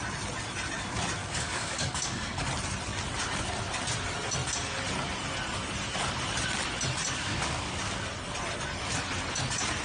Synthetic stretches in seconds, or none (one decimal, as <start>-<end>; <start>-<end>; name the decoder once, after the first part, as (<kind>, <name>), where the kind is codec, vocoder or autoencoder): 1.2-2.5 (codec, DAC)